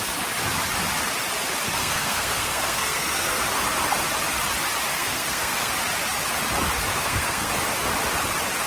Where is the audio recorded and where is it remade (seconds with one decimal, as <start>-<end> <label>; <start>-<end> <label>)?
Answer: 0.0-1.8 recorded; 1.8-3.4 remade; 3.4-4.9 recorded; 4.9-5.7 remade; 5.7-6.9 recorded; 6.9-7.5 remade; 7.5-8.7 recorded

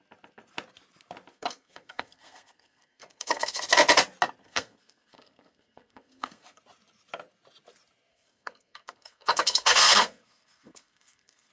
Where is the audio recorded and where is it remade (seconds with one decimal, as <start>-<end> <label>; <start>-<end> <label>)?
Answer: 0.0-1.3 recorded; 1.3-3.6 remade; 3.6-4.4 recorded; 4.4-6.6 remade; 6.6-8.1 recorded; 8.1-11.5 remade

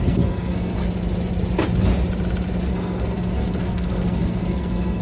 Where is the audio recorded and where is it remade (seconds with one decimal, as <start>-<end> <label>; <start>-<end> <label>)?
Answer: 0.0-0.8 remade; 0.8-2.7 recorded; 2.7-5.0 remade

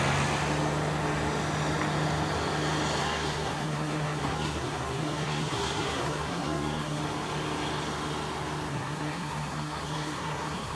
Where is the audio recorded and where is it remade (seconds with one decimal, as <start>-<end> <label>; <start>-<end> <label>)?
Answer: 0.0-3.0 recorded; 3.0-7.0 remade; 7.0-8.7 recorded; 8.7-10.8 remade